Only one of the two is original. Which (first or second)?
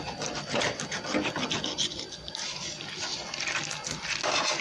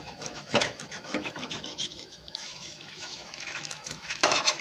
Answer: first